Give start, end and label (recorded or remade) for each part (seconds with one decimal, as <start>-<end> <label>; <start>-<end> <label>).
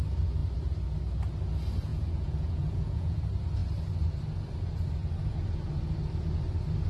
0.0-1.9 recorded; 1.9-3.2 remade; 3.2-6.9 recorded